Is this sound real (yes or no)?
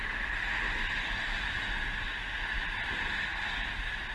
yes